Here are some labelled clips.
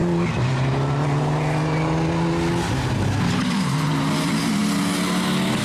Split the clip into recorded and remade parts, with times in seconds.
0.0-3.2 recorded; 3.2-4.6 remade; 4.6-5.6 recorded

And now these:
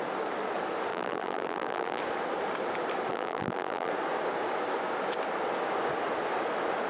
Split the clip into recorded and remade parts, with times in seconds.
0.0-0.9 recorded; 0.9-2.0 remade; 2.0-3.1 recorded; 3.1-3.9 remade; 3.9-6.9 recorded

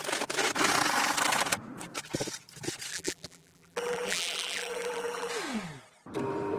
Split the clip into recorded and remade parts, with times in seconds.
0.0-2.9 recorded; 2.9-5.3 remade; 5.3-6.6 recorded

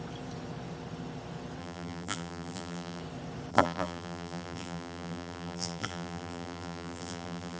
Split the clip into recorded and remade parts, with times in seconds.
0.0-1.6 recorded; 1.6-3.0 remade; 3.0-3.5 recorded; 3.5-7.6 remade